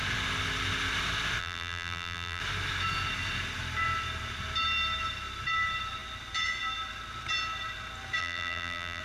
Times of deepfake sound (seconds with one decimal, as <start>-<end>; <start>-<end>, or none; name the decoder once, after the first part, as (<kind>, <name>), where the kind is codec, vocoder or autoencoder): 1.4-2.4 (vocoder, BigVGAN v2); 8.2-9.0

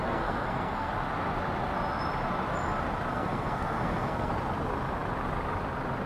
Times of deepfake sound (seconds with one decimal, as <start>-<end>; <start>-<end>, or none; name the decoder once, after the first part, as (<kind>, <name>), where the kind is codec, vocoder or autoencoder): 0.0-0.9 (codec, SNAC); 3.1-4.3

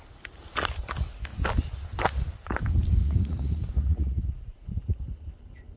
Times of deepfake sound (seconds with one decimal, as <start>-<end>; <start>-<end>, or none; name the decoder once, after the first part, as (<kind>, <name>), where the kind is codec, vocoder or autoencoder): 3.0-4.8 (vocoder, Vocos)